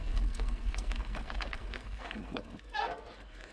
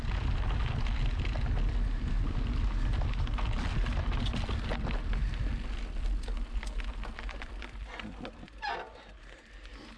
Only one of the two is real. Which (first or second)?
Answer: second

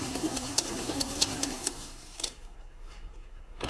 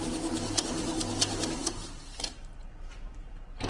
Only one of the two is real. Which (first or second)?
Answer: second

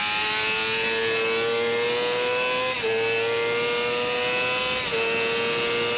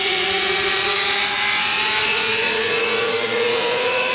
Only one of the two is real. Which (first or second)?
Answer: first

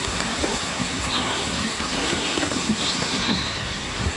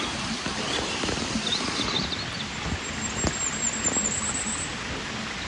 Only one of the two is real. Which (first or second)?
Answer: second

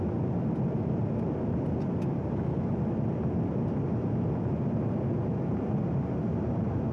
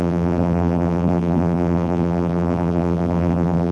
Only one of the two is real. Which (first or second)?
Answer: first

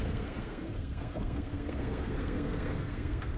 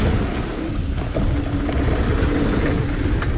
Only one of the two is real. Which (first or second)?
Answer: second